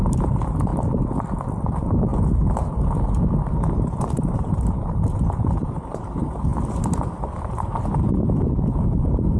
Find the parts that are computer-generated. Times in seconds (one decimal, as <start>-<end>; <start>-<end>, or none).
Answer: 0.0-0.7; 1.7-2.1; 4.0-9.4